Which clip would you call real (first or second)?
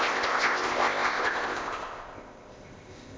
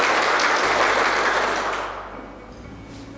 second